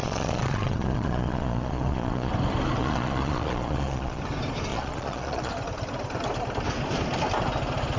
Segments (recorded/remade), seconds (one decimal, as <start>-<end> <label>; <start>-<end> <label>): 0.0-2.3 remade; 2.3-2.8 recorded; 2.8-4.2 remade; 4.2-4.7 recorded; 4.7-5.5 remade; 5.5-8.0 recorded